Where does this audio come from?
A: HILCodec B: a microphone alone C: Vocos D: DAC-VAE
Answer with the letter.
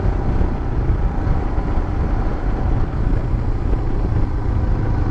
B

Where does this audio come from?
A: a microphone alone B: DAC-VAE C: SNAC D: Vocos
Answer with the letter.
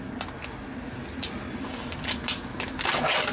A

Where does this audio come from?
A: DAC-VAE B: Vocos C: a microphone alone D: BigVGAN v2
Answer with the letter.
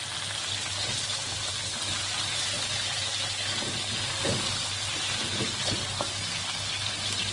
C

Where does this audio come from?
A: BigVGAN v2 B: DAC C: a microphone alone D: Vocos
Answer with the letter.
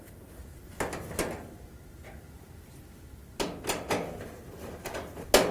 C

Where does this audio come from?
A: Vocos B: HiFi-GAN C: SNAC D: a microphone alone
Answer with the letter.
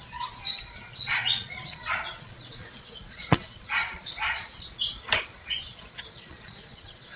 A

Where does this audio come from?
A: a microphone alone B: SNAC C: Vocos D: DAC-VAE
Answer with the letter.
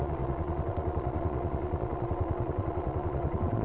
C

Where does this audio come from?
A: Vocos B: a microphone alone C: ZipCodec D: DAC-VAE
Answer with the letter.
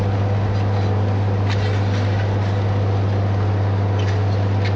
B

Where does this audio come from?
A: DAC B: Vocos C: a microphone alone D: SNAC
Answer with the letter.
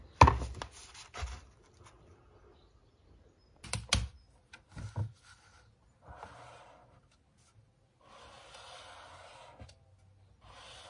C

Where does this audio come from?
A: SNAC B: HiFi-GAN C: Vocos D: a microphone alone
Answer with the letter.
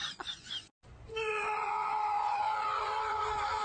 C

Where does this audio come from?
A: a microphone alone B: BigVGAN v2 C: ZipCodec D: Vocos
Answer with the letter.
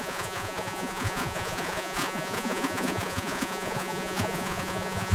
D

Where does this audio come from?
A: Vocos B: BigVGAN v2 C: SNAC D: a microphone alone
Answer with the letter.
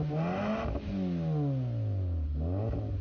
D